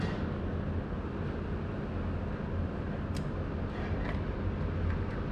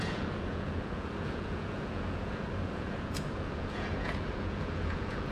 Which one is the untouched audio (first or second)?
first